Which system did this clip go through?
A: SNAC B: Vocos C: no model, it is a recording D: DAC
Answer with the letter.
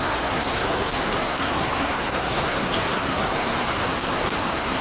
A